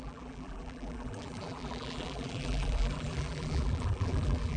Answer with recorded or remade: remade